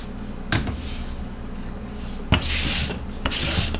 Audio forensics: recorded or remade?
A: recorded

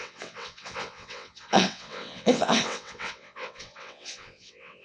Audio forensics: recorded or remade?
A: remade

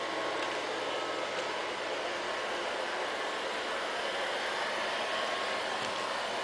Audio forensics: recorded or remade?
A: recorded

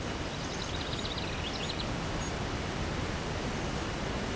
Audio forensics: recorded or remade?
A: recorded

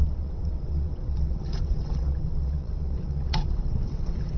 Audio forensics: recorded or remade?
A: remade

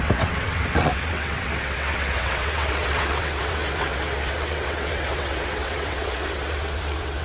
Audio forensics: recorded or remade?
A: remade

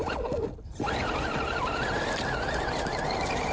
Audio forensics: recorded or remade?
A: recorded